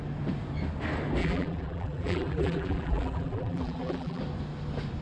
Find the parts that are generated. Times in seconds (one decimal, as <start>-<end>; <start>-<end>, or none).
1.2-4.2